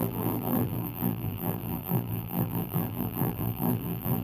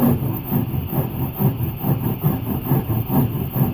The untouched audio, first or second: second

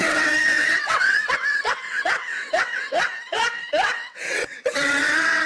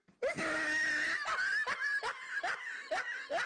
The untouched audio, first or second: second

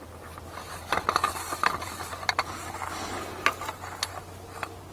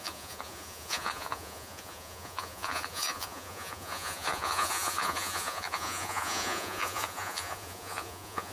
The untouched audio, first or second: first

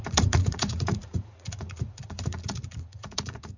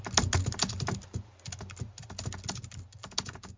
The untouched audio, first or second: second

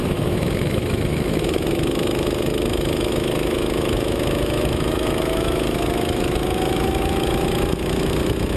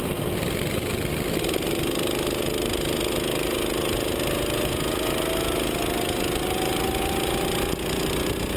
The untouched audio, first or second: second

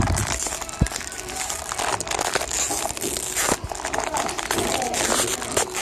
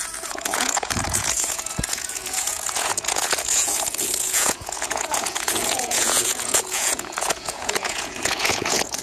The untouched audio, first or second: first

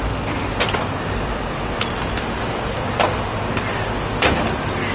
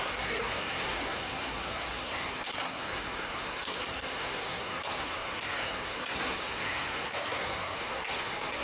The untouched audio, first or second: first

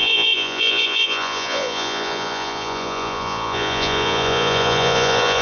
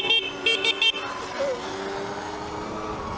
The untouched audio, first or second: second